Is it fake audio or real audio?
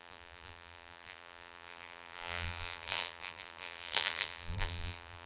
fake